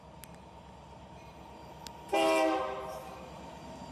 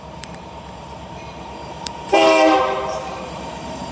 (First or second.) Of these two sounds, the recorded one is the first